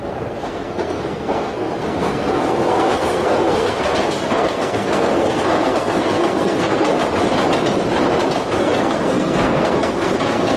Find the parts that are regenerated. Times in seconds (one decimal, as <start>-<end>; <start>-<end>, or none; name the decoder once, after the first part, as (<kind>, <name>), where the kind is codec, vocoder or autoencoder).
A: 0.0-7.0 (codec, SNAC); 8.6-10.6